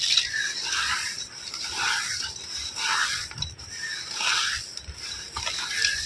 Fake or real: fake